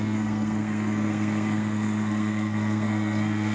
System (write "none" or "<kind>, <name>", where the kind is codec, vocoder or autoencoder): codec, SNAC